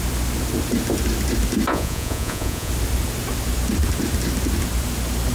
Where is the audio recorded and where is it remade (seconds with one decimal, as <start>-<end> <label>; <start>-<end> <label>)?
0.0-1.7 recorded; 1.7-2.7 remade; 2.7-5.3 recorded